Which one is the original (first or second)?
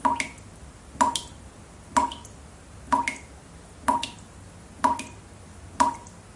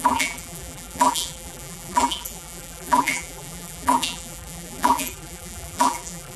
first